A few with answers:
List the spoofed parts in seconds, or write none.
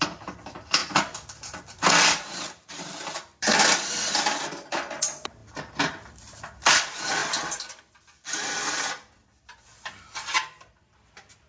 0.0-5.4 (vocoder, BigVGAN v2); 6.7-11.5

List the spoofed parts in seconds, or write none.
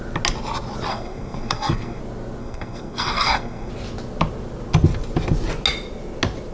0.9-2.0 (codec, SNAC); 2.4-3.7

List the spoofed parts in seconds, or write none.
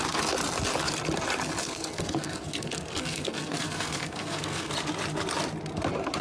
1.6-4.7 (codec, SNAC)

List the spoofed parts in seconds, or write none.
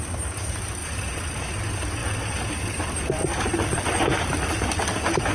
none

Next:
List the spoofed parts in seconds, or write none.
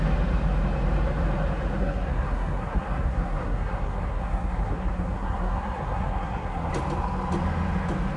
1.8-6.7 (codec, SNAC)